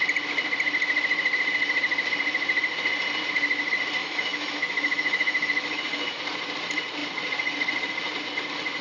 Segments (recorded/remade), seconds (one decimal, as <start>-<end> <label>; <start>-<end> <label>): 0.0-4.0 recorded; 4.0-6.2 remade; 6.2-8.8 recorded